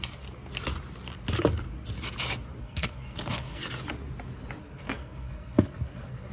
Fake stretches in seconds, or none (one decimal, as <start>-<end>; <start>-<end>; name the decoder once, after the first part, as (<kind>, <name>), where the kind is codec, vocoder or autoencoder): 2.6-3.6 (codec, SNAC); 4.6-6.3